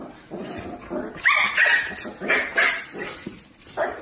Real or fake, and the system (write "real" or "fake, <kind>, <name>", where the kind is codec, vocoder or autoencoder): real